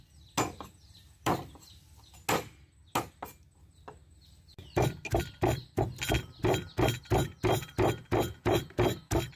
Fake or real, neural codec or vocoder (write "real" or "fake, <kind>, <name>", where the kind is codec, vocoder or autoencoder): real